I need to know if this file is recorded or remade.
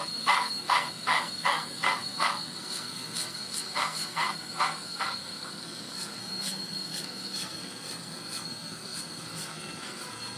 remade